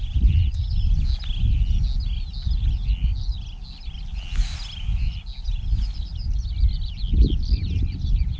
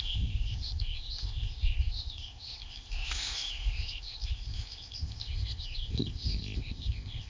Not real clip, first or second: second